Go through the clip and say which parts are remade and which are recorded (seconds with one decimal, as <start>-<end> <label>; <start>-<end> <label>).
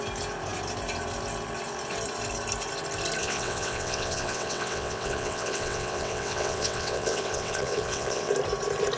0.0-3.2 recorded; 3.2-8.3 remade; 8.3-9.0 recorded